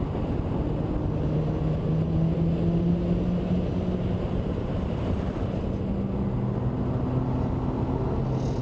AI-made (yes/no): no